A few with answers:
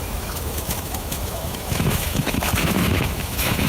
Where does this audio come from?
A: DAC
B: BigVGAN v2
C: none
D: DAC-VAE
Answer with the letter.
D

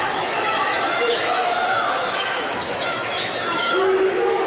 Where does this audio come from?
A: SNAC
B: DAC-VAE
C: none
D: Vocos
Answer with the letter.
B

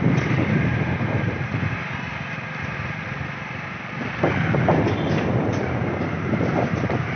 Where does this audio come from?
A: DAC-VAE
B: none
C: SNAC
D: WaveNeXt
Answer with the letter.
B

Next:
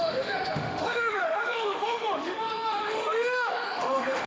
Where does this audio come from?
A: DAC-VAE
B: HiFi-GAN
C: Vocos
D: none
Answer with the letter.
A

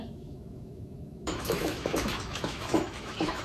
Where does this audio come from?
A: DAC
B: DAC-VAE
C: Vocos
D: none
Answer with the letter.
B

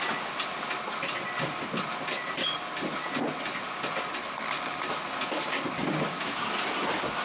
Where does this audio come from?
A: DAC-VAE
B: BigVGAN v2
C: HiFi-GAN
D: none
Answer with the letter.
D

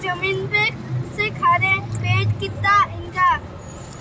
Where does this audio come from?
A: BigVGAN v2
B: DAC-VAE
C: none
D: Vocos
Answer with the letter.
C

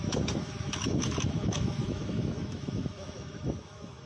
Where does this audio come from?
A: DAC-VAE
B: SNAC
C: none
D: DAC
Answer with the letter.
A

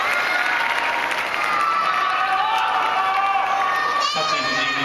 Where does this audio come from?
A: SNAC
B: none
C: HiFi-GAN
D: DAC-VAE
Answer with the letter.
B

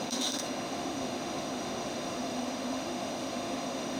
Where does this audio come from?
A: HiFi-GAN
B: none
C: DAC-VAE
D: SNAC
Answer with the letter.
C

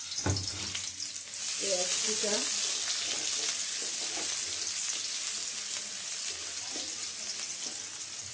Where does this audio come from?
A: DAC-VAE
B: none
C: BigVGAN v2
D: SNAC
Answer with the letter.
B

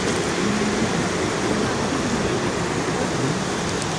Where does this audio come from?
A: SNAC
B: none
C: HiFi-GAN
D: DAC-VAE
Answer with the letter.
B